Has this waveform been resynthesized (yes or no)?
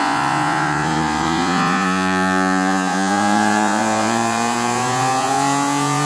yes